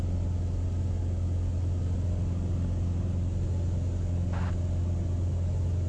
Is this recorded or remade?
recorded